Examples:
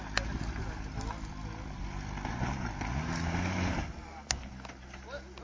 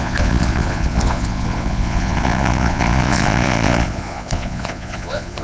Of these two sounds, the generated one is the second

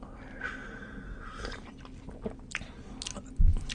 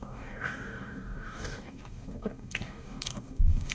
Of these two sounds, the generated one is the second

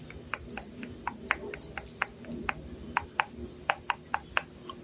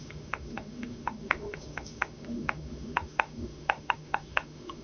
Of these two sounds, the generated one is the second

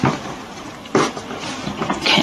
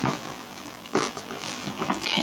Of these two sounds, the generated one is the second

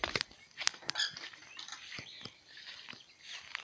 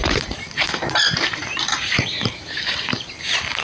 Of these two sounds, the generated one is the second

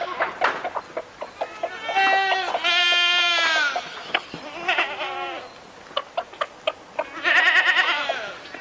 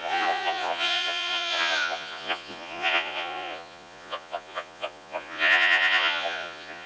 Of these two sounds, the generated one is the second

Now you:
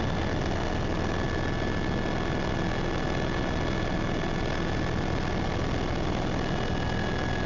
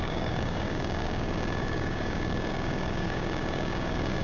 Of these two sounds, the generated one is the second